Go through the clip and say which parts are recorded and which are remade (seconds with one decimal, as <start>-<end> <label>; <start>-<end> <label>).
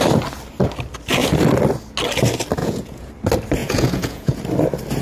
0.0-2.6 recorded; 2.6-3.1 remade; 3.1-3.6 recorded; 3.6-4.4 remade; 4.4-5.0 recorded